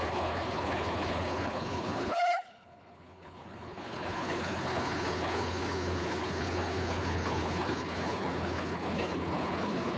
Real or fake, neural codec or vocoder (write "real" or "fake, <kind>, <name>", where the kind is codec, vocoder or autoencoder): fake, codec, HILCodec